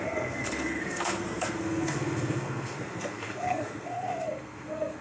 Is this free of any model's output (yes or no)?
no